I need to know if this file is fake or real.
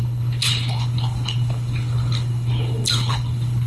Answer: fake